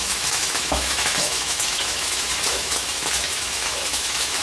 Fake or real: fake